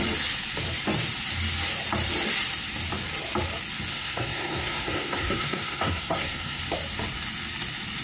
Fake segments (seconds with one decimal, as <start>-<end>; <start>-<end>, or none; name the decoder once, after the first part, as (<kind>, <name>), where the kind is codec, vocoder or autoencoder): 3.9-6.6 (codec, SNAC)

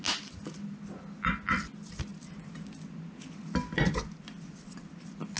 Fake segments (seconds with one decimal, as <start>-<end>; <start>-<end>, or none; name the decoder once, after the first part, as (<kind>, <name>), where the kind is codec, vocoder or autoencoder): none

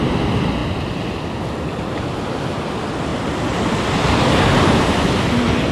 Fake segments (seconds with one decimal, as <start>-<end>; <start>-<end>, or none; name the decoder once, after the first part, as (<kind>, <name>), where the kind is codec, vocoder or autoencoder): none

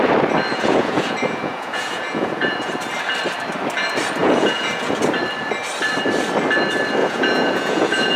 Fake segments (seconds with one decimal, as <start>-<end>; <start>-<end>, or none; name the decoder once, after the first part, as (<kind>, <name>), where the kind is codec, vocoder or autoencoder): 0.5-2.7 (vocoder, Vocos); 4.2-4.9; 7.0-8.2